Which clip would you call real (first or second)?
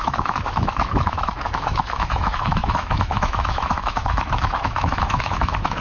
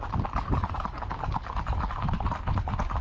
second